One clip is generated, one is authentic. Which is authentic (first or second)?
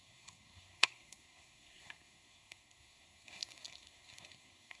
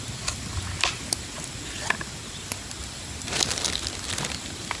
second